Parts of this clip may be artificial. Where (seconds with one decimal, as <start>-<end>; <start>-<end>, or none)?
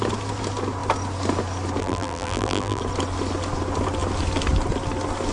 1.8-2.8